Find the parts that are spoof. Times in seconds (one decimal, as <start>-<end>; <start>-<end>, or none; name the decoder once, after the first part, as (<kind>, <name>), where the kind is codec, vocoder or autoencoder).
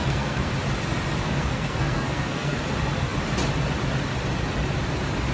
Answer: 0.0-0.5 (codec, SNAC); 1.2-2.6